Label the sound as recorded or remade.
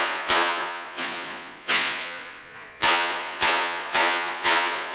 remade